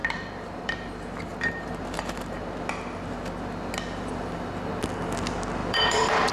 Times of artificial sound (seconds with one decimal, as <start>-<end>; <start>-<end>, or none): 0.0-0.9; 1.3-2.4; 5.6-6.3

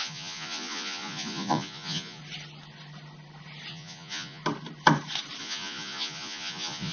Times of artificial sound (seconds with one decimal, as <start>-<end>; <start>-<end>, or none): 0.0-2.2; 3.7-4.4; 5.4-6.9

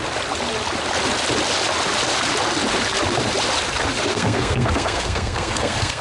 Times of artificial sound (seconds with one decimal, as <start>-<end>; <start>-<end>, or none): 4.1-6.0

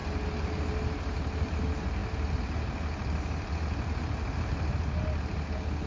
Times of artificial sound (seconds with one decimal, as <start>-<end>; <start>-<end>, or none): none